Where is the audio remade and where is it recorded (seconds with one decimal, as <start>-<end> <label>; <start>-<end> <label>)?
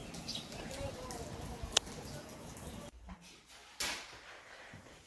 0.0-3.1 recorded; 3.1-5.1 remade